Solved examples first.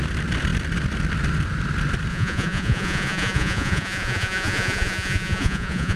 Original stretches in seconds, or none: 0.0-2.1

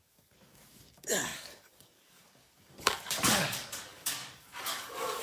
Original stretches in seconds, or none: none

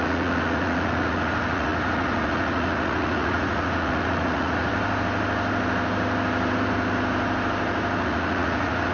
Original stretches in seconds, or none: 4.7-8.0

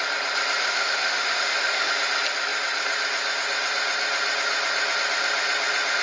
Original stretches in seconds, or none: 0.0-0.6; 1.9-6.0